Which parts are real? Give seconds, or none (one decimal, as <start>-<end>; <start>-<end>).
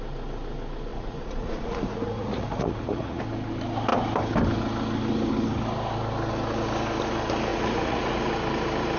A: 0.0-0.9; 3.2-7.5; 8.2-9.0